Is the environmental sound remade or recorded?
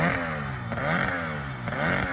recorded